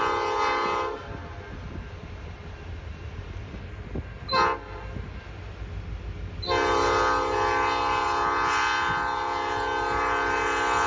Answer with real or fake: real